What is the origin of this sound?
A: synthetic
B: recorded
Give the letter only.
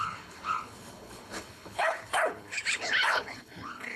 A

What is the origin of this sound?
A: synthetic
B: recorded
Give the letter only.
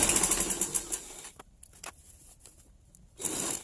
B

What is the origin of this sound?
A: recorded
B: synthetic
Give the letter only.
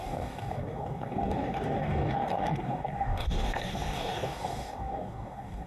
B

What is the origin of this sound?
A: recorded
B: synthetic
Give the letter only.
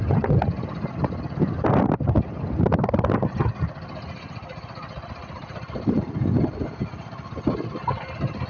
A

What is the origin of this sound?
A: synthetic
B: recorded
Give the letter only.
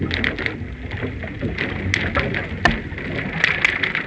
B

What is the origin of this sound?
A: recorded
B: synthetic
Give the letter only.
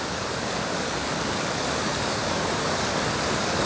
B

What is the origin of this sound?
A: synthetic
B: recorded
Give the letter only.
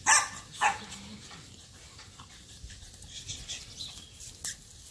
B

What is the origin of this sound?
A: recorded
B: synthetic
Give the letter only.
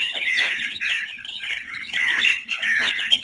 B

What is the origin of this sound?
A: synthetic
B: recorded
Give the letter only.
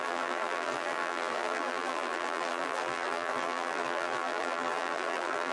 A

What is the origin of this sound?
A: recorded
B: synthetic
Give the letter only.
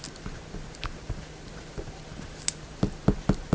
A